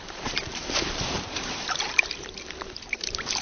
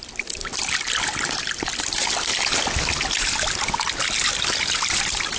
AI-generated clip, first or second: first